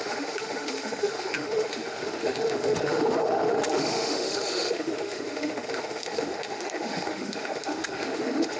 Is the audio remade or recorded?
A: remade